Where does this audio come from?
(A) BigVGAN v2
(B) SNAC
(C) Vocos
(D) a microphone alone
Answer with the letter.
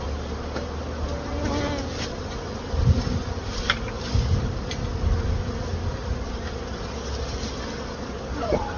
D